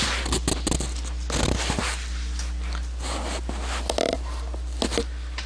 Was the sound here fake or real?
real